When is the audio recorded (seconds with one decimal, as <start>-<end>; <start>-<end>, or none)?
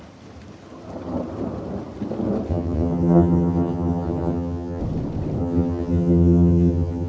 0.0-2.5; 4.8-5.4